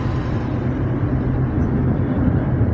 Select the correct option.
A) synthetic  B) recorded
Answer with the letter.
B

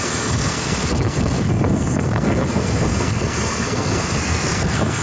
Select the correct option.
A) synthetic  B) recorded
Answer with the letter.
A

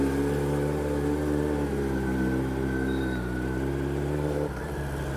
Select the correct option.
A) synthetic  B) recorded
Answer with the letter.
B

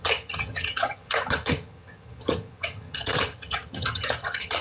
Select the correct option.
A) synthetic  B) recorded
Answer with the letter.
A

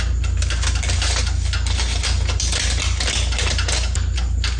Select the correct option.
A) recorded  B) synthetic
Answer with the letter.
A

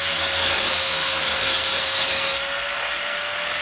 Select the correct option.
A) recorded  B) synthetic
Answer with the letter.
B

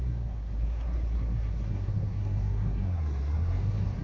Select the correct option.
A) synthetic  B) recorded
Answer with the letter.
A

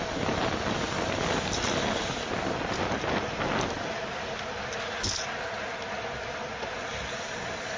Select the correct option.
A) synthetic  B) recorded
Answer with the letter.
B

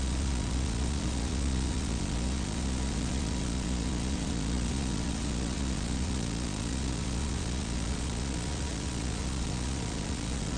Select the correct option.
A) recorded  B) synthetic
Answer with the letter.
B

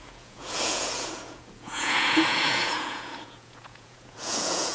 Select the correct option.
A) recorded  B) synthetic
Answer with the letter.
B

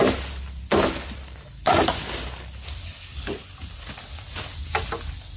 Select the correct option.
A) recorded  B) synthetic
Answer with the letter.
A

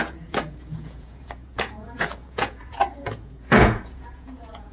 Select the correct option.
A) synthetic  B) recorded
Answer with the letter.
A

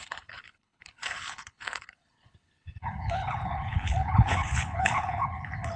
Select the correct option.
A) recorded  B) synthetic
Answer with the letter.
B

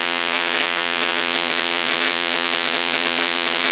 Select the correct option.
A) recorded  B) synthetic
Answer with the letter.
B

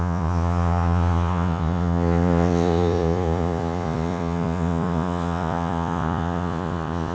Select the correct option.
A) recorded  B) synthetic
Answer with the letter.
B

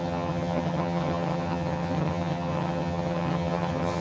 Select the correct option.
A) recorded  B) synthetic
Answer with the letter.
B